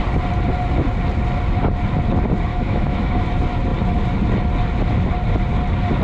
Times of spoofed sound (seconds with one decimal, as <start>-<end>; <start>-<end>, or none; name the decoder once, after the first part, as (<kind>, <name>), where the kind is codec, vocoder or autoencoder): 2.5-3.2 (autoencoder, DAC-VAE)